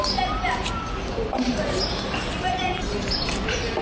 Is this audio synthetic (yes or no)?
no